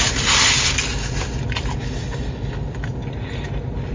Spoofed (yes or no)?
no